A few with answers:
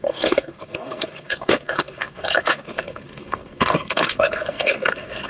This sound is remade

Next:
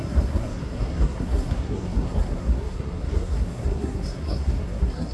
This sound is remade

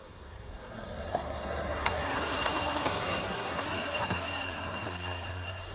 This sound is remade